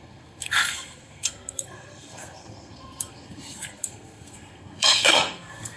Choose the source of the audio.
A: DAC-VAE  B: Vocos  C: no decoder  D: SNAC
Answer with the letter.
D